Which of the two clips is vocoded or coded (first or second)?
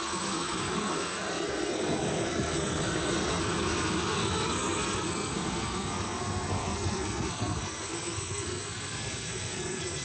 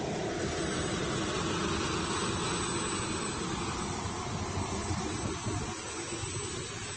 first